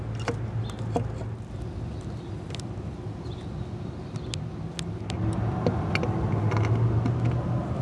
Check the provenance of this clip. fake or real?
real